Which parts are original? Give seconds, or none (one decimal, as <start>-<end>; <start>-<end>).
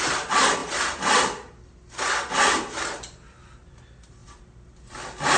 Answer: 0.0-5.4